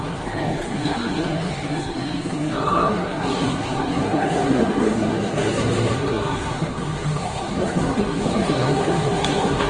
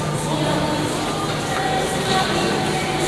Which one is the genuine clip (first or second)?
second